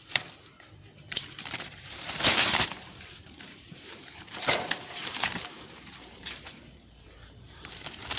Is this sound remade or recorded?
remade